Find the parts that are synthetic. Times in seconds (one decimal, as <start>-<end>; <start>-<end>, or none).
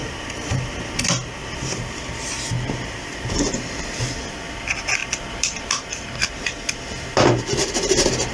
0.0-0.9; 1.4-3.7; 5.0-8.3